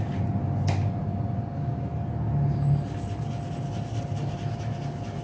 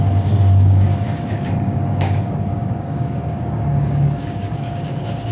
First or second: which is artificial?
second